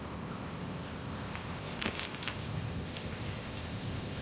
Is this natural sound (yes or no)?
no